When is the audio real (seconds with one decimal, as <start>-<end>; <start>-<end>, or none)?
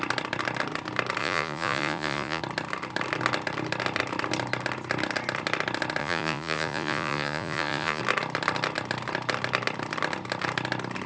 0.0-1.2; 2.4-6.0; 8.0-11.1